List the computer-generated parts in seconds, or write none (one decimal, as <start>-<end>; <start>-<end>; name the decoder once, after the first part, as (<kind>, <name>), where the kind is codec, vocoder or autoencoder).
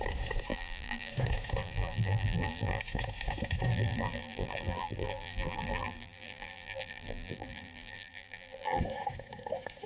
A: 0.5-1.1 (vocoder, BigVGAN v2); 1.6-2.8; 3.7-8.8